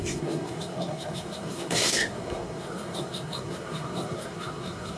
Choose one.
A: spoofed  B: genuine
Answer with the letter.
A